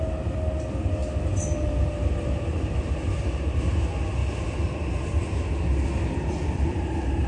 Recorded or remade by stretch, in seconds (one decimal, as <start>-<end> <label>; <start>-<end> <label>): 0.0-7.3 recorded